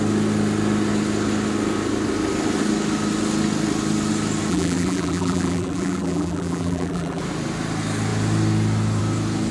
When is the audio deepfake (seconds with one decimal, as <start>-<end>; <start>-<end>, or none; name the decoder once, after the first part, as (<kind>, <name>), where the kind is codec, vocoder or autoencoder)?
4.5-7.2 (vocoder, BigVGAN v2)